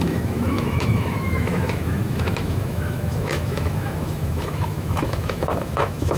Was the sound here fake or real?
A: fake